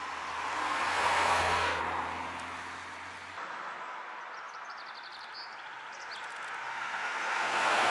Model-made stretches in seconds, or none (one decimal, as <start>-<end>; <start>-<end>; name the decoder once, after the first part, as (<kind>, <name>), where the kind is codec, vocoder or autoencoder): 0.6-1.8 (codec, SNAC); 6.7-7.9